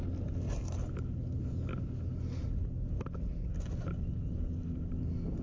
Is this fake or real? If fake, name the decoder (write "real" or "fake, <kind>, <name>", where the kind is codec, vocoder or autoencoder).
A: real